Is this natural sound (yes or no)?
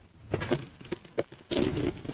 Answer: yes